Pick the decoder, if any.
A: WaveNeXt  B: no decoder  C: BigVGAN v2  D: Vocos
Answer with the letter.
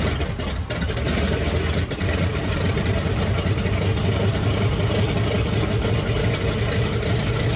B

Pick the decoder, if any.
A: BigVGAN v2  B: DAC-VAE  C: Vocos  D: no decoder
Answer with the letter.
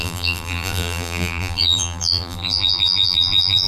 A